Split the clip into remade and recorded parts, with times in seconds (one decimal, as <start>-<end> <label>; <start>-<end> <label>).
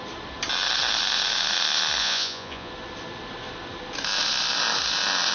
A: 0.0-2.0 recorded; 2.0-2.7 remade; 2.7-5.3 recorded